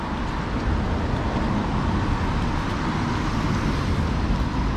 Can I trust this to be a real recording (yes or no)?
yes